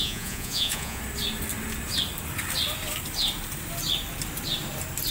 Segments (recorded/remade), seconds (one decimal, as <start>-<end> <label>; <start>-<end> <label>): 0.0-1.0 remade; 1.0-5.1 recorded